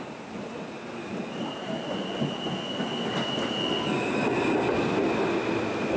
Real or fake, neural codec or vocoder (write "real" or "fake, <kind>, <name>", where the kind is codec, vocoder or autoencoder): real